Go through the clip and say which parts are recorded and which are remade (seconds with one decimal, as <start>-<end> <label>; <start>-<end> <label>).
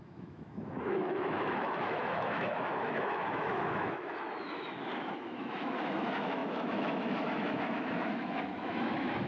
0.0-9.3 remade